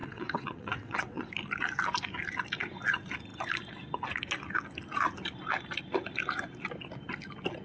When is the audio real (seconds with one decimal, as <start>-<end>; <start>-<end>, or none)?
1.3-7.6